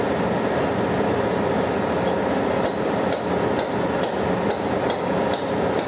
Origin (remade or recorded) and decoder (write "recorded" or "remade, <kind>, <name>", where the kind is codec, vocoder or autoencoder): recorded